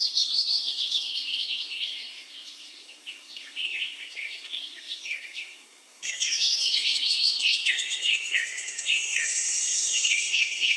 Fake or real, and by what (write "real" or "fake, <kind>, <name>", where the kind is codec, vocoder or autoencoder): fake, codec, SNAC